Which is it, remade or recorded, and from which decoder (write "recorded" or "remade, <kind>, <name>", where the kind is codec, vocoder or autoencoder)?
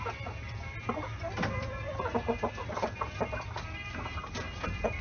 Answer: remade, vocoder, BigVGAN v2